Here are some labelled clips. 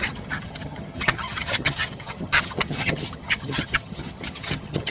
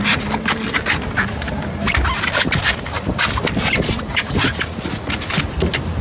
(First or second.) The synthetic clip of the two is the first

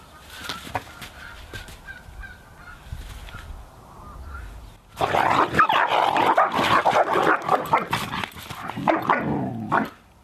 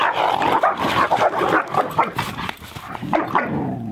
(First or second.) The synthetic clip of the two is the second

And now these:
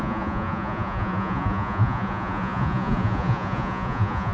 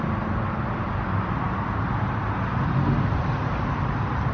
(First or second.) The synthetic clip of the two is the first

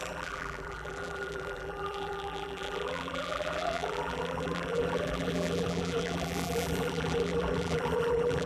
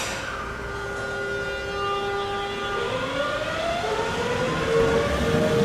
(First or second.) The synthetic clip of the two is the first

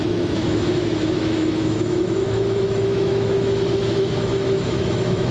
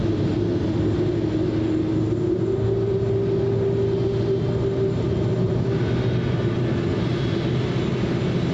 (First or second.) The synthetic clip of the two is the first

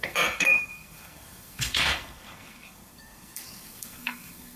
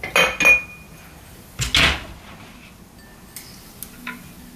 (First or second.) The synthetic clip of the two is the first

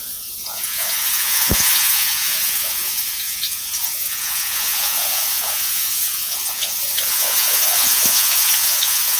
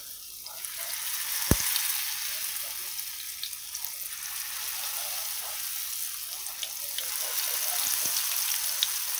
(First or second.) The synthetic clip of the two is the first